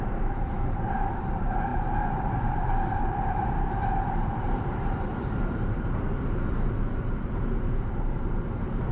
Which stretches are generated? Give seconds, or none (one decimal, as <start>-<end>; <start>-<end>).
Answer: 0.0-8.9